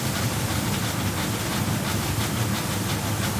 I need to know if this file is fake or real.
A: real